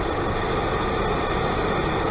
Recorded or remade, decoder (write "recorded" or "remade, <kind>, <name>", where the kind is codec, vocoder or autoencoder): recorded